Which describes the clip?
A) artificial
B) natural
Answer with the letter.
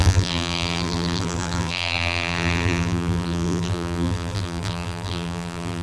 A